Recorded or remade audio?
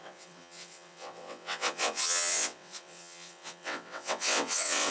remade